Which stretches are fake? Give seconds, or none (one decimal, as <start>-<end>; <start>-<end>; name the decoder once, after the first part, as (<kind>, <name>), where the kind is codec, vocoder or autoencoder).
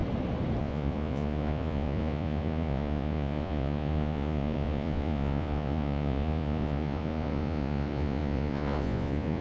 0.6-9.4 (vocoder, Vocos)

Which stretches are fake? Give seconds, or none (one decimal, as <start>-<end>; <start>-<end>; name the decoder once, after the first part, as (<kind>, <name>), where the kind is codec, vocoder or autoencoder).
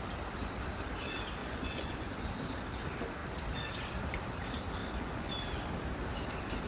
1.4-2.3 (vocoder, Vocos); 4.8-5.3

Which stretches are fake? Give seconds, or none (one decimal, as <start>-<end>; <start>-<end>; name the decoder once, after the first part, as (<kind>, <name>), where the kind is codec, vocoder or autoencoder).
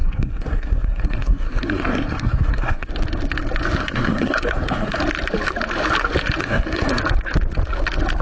0.0-2.9 (codec, SNAC); 3.8-5.0; 6.4-7.0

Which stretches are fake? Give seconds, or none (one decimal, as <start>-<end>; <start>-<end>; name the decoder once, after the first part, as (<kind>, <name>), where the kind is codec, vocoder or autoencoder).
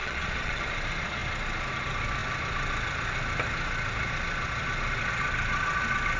0.0-0.6 (vocoder, Vocos)